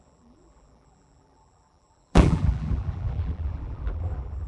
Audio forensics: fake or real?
fake